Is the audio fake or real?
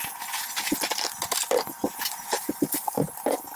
real